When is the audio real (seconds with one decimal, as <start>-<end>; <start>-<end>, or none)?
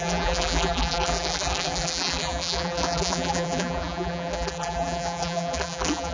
none